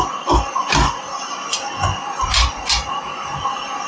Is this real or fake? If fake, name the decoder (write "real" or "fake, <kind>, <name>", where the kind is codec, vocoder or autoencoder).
real